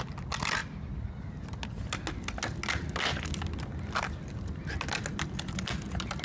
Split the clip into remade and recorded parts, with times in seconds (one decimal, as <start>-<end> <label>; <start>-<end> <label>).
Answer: 0.0-6.2 recorded